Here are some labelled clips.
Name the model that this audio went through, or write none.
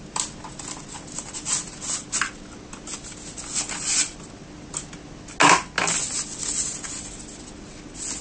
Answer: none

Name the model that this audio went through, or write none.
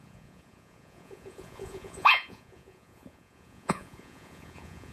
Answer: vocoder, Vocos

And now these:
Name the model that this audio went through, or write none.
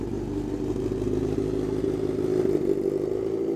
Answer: none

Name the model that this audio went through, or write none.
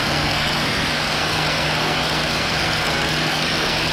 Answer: codec, SNAC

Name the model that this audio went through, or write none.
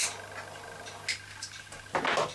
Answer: none